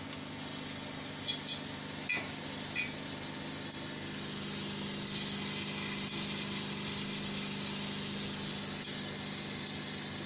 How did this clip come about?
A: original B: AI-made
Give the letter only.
A